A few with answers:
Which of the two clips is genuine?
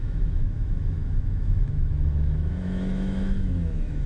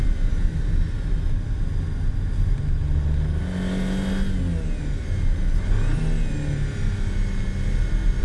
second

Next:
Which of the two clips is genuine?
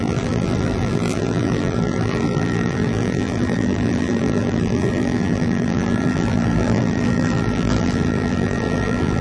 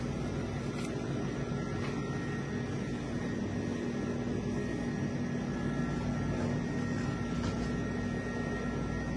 second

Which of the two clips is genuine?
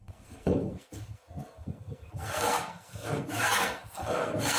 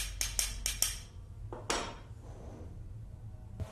second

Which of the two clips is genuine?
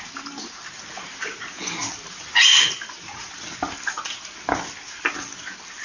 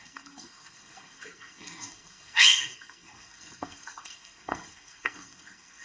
first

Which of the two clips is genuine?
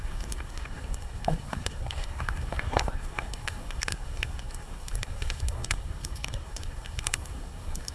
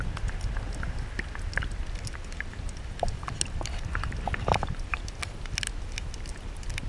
second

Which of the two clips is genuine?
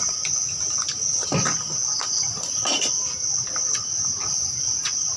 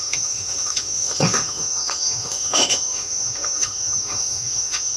first